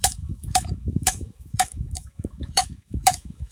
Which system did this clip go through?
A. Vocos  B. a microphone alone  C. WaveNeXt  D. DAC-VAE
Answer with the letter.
D